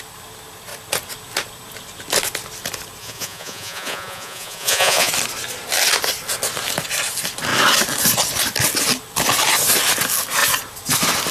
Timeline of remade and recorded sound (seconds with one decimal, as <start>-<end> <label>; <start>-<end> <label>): 0.0-3.0 recorded; 3.0-5.1 remade; 5.1-11.3 recorded